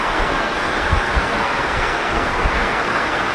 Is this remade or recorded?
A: remade